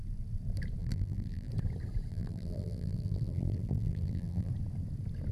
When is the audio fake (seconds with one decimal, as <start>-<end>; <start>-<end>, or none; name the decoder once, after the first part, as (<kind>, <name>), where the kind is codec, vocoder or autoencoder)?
0.8-1.5 (vocoder, BigVGAN v2); 2.1-4.5